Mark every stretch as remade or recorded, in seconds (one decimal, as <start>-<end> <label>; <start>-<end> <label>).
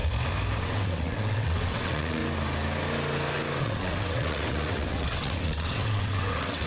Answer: 0.0-0.6 recorded; 0.6-2.2 remade; 2.2-3.6 recorded; 3.6-6.7 remade